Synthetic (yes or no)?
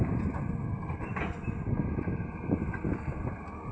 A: no